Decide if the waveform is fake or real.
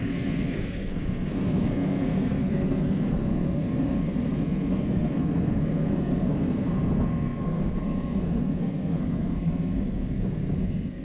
fake